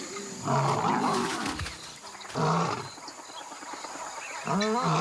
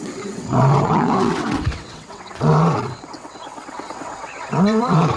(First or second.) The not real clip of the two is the second